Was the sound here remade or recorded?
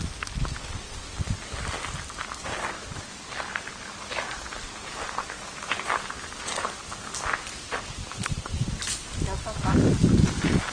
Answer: recorded